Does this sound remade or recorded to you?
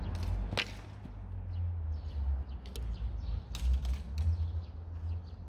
recorded